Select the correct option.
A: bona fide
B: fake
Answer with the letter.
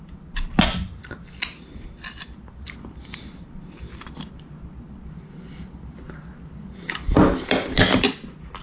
A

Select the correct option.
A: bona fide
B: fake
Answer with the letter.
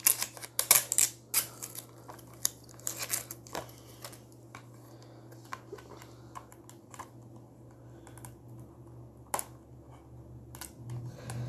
A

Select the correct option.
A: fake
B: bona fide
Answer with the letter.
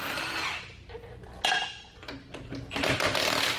B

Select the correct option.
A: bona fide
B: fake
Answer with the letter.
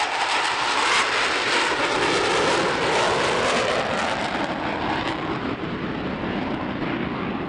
A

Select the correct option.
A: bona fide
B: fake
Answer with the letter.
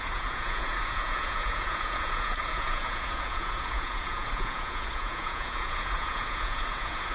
B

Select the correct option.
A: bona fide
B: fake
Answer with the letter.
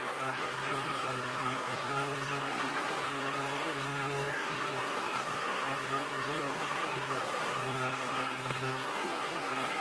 B